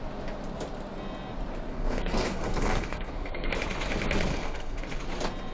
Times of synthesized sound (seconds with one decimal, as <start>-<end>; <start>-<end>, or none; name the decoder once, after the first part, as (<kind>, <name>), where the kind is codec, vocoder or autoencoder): 1.7-3.5 (codec, SNAC); 4.3-4.8